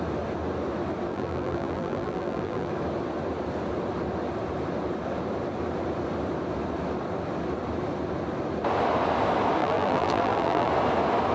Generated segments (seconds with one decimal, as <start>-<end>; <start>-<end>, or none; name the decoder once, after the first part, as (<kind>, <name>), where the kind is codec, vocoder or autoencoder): 1.1-2.7 (vocoder, BigVGAN v2); 9.6-10.7